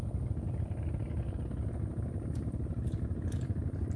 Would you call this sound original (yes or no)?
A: yes